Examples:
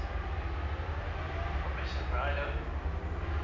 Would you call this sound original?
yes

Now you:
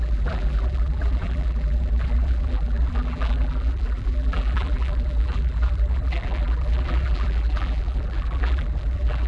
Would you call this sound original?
no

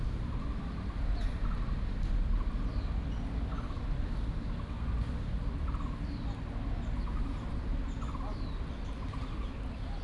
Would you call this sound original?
yes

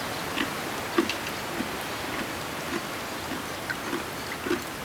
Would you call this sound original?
yes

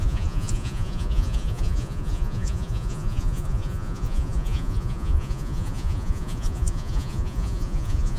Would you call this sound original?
no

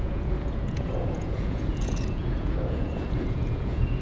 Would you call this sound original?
no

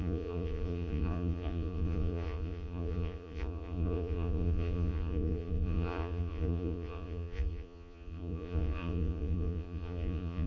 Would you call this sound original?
no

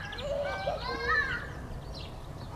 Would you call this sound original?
yes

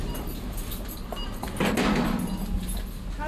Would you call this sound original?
yes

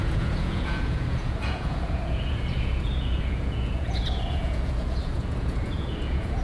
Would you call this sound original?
no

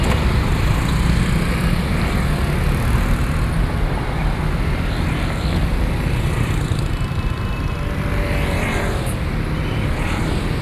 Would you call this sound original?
yes